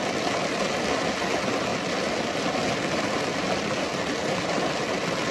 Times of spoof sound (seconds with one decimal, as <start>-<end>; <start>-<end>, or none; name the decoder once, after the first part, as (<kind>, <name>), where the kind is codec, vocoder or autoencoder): none

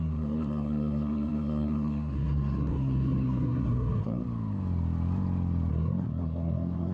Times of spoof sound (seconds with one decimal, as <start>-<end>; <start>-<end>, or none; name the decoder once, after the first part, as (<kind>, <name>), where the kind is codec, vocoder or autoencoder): 0.0-4.2 (codec, SNAC); 5.7-6.9

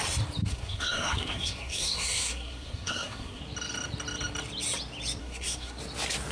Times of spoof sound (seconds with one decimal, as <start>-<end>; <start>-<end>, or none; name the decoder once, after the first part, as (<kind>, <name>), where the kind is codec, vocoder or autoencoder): 0.5-3.4 (codec, SNAC); 5.2-5.8

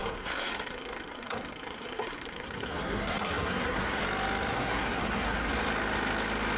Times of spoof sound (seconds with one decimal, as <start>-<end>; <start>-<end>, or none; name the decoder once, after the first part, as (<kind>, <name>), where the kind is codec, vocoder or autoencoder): 0.0-4.0 (codec, SNAC); 4.5-5.5

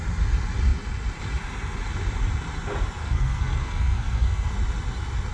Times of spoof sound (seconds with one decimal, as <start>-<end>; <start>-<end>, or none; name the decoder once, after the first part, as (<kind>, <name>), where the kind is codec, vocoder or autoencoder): 3.0-4.5 (codec, SNAC)